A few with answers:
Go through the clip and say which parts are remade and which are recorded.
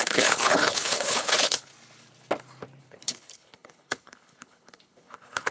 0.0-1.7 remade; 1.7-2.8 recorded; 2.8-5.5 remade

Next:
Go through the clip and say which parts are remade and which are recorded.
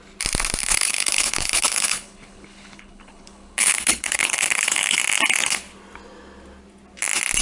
0.0-0.6 recorded; 0.6-5.0 remade; 5.0-7.4 recorded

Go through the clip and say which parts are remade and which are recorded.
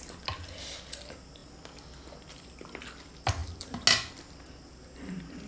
0.0-5.5 recorded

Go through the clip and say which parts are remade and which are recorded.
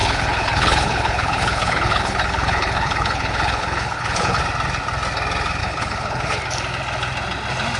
0.0-4.4 remade; 4.4-5.6 recorded; 5.6-6.4 remade; 6.4-7.8 recorded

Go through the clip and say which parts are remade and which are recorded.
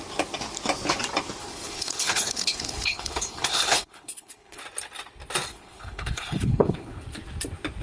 0.0-1.4 recorded; 1.4-4.6 remade; 4.6-5.5 recorded; 5.5-7.0 remade; 7.0-7.8 recorded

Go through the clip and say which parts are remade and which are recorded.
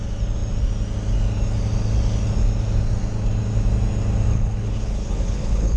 0.0-4.3 recorded; 4.3-5.8 remade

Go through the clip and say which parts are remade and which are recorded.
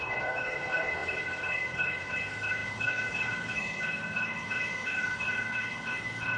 0.0-6.4 remade